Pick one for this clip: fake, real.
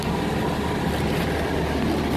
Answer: real